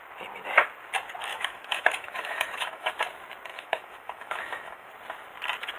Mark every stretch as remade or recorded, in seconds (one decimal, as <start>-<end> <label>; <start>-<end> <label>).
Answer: 0.0-1.3 recorded; 1.3-2.9 remade; 2.9-3.5 recorded; 3.5-4.9 remade; 4.9-5.8 recorded